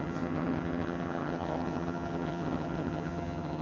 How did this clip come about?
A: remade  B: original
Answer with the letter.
A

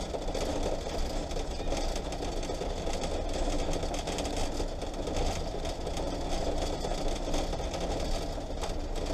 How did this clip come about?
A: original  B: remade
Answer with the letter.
A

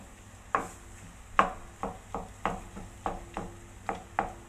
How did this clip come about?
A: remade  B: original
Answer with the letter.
B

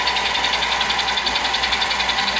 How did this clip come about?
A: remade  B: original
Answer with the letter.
A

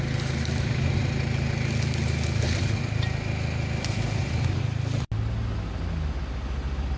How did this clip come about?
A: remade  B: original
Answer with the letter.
B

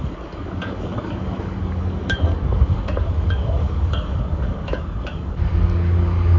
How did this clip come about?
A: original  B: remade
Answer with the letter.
B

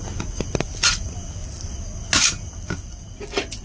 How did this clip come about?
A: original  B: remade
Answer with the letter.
A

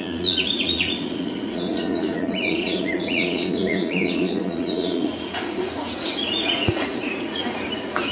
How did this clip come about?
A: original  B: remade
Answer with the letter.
B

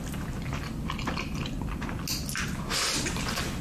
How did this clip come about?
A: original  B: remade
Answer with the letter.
A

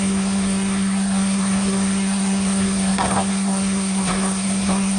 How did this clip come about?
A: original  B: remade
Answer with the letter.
B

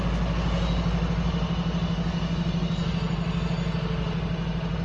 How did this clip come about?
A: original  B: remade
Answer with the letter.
A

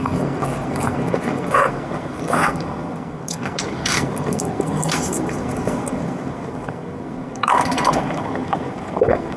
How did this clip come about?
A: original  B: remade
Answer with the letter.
B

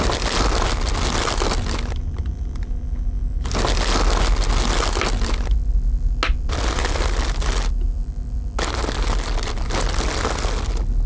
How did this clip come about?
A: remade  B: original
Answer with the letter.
B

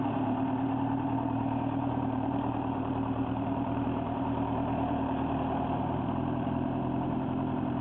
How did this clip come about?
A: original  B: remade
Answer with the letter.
B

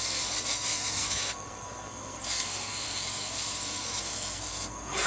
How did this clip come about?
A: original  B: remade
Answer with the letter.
B